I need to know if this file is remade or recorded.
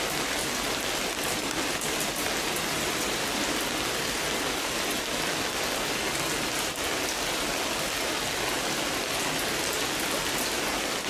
recorded